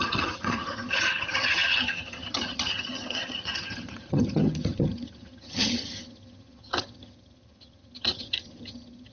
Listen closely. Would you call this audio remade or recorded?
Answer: remade